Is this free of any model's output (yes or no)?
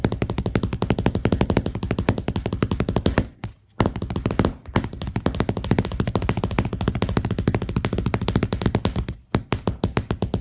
yes